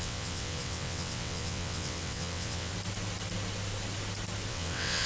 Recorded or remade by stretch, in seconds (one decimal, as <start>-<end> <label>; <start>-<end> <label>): 0.0-2.7 remade; 2.7-4.5 recorded; 4.5-5.1 remade